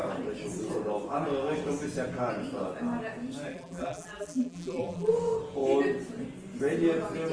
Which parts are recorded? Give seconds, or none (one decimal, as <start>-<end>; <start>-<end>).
0.0-3.5; 5.1-7.3